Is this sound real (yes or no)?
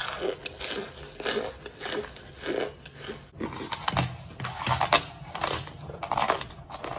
yes